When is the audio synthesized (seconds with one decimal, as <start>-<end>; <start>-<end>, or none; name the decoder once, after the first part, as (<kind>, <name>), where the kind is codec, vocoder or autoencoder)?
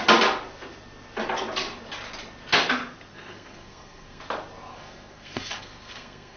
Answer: 3.1-4.2 (codec, SNAC); 4.7-6.4